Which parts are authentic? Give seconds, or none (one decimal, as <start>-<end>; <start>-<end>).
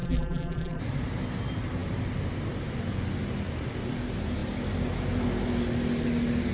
0.8-6.5